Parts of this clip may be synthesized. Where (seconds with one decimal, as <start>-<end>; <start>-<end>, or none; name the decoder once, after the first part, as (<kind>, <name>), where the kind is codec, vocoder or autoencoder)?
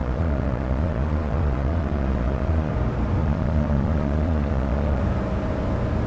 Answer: 0.0-2.7 (vocoder, Vocos); 3.2-5.0